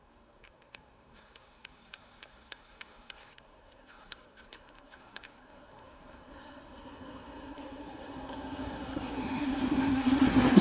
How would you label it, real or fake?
fake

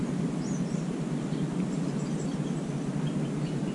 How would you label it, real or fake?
real